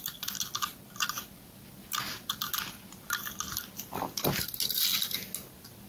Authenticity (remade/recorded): recorded